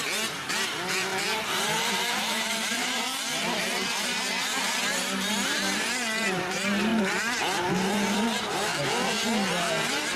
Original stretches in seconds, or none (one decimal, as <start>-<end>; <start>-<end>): 8.7-9.5